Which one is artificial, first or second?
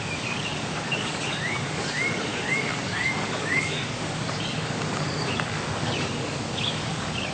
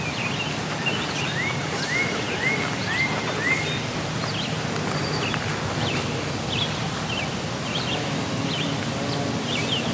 first